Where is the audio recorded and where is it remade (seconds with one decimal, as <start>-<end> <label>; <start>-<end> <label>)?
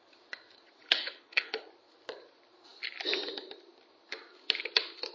0.0-0.8 recorded; 0.8-1.6 remade; 1.6-5.1 recorded